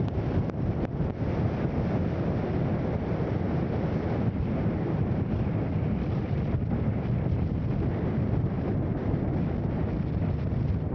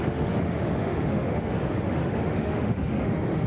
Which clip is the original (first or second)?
first